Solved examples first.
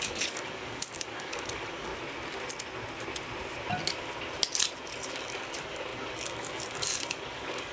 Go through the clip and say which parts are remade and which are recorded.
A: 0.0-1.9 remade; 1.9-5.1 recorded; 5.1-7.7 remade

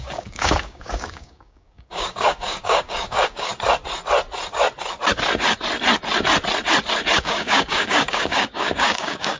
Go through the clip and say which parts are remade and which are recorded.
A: 0.0-3.5 remade; 3.5-7.2 recorded; 7.2-9.4 remade

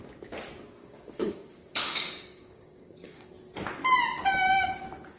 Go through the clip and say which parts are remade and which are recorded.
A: 0.0-0.8 recorded; 0.8-3.3 remade; 3.3-5.2 recorded

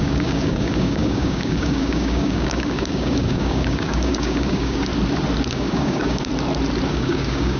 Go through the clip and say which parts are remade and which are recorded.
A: 0.0-4.9 remade; 4.9-5.5 recorded; 5.5-6.3 remade; 6.3-6.9 recorded; 6.9-7.6 remade

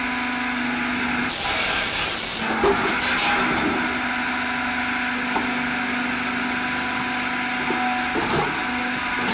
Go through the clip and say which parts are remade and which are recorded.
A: 0.0-9.3 recorded